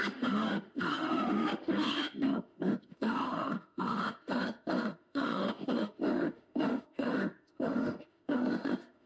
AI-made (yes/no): yes